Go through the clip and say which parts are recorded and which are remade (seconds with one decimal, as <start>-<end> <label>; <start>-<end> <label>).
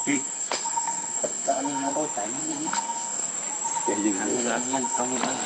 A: 0.0-1.9 remade; 1.9-2.4 recorded; 2.4-3.3 remade; 3.3-4.3 recorded; 4.3-5.0 remade; 5.0-5.5 recorded